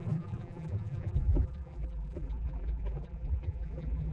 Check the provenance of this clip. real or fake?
fake